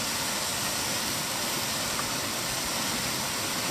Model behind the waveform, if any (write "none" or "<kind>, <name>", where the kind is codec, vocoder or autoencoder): vocoder, BigVGAN v2